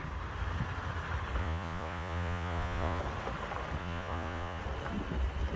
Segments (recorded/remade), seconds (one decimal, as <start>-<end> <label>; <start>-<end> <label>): 0.0-1.4 recorded; 1.4-3.0 remade; 3.0-3.8 recorded; 3.8-4.6 remade; 4.6-5.6 recorded